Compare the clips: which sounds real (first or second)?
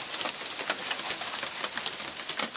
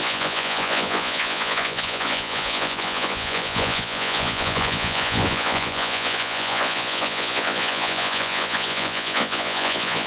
first